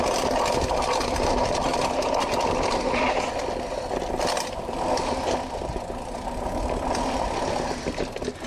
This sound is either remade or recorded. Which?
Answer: recorded